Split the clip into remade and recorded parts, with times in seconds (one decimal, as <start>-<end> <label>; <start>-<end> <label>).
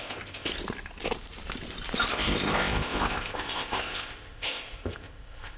0.0-0.5 remade; 0.5-2.1 recorded; 2.1-5.6 remade